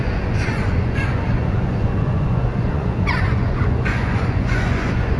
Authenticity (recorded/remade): remade